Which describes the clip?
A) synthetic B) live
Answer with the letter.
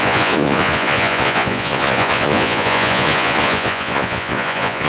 A